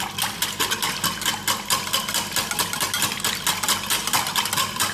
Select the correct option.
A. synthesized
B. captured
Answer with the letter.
B